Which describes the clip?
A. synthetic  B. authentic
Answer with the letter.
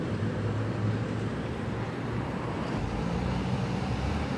B